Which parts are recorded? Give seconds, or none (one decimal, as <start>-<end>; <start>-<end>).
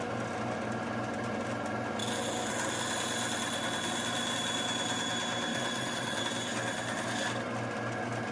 0.0-5.5; 6.2-8.3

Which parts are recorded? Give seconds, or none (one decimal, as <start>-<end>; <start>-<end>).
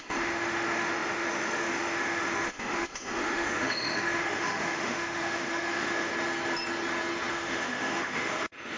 6.1-7.3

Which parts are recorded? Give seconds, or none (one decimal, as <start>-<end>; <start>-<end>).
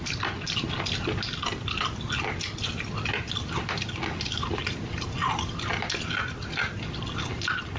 0.0-7.8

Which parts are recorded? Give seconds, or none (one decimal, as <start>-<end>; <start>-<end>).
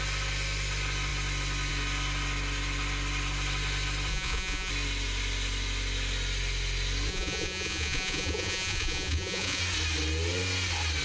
0.0-4.1; 4.7-7.1; 9.6-11.0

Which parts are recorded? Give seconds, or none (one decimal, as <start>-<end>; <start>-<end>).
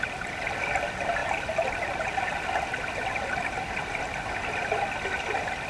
0.0-5.7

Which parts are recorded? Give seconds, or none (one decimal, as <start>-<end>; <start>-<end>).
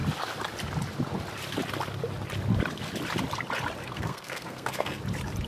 0.0-3.8; 5.0-5.5